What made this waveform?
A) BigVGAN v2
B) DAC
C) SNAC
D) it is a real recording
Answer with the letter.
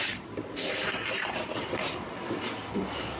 D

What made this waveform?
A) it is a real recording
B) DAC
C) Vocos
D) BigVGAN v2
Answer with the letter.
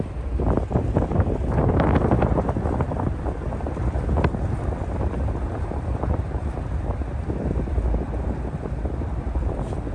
A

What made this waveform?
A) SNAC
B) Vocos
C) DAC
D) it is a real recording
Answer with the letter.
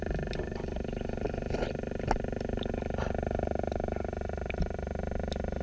D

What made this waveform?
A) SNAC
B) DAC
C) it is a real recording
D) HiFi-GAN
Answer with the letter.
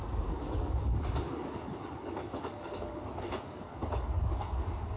B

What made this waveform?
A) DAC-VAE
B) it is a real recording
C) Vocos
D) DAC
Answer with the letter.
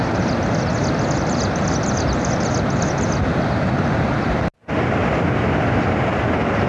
B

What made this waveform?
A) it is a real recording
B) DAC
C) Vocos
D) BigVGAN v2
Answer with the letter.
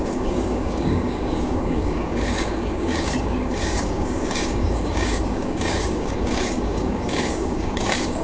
B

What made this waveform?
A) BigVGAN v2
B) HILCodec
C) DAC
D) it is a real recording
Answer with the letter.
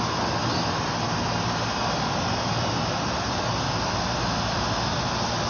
D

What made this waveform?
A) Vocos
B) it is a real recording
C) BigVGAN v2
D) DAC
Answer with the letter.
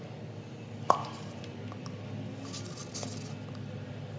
B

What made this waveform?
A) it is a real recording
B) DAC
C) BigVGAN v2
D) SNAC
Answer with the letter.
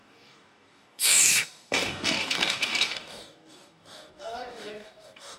B